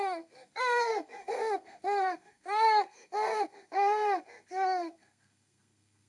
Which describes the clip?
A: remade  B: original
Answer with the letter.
A